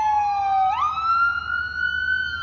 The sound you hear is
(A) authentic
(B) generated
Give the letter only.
A